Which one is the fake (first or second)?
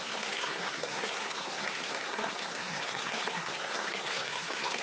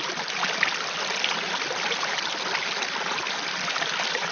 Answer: first